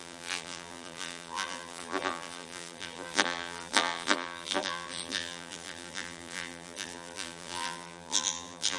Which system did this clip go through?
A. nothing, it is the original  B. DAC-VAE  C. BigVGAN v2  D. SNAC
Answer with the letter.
C